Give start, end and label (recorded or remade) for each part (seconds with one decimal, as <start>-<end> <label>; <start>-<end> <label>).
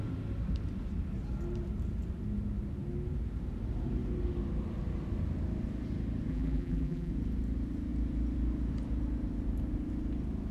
0.0-6.3 recorded; 6.3-7.1 remade; 7.1-10.5 recorded